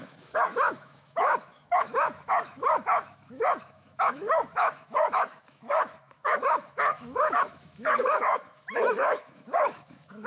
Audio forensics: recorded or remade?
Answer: remade